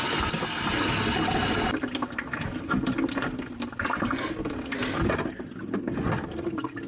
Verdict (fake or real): real